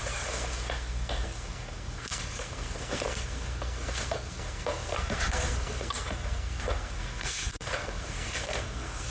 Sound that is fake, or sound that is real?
fake